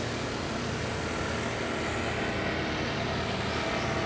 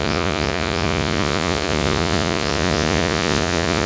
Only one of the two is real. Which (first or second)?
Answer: first